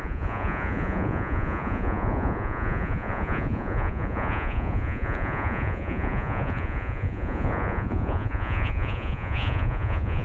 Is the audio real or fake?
fake